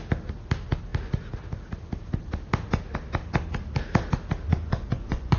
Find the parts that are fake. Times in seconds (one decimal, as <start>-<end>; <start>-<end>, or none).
4.5-5.4